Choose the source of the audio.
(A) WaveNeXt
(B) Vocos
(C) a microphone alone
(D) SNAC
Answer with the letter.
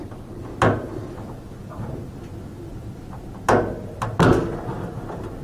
C